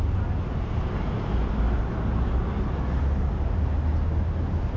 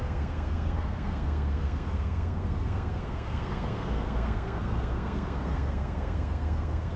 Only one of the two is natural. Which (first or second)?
first